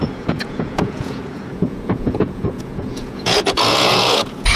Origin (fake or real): fake